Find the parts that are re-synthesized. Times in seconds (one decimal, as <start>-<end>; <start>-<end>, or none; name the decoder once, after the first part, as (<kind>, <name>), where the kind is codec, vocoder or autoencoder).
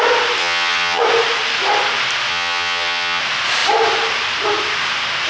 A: 0.4-1.0 (vocoder, HiFi-GAN); 2.3-3.2